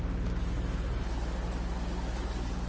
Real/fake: real